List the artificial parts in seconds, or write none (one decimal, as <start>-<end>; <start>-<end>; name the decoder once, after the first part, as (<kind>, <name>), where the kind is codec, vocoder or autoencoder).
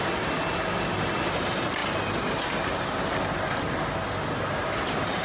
none